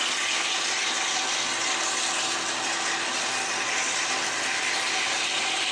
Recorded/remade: recorded